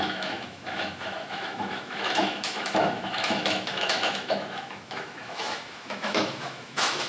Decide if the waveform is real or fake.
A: fake